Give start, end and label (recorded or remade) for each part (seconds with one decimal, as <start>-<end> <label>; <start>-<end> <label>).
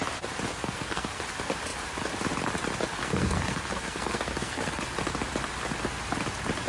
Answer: 0.0-0.5 recorded; 0.5-1.2 remade; 1.2-3.0 recorded; 3.0-4.8 remade; 4.8-6.7 recorded